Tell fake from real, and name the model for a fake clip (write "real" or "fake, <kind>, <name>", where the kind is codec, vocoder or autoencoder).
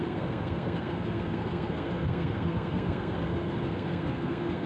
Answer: fake, codec, SNAC